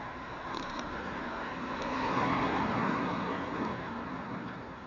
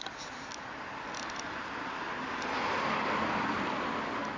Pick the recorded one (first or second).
second